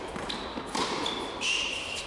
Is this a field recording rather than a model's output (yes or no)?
yes